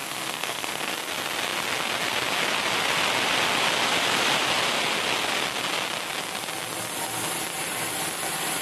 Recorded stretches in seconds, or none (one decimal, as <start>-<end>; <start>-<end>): 0.9-8.6